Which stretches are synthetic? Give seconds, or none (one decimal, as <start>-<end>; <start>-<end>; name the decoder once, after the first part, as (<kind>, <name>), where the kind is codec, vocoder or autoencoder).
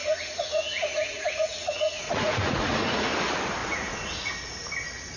0.0-3.1 (vocoder, Vocos); 3.6-4.3